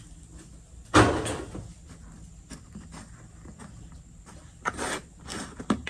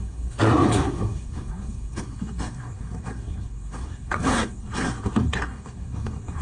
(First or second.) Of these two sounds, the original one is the first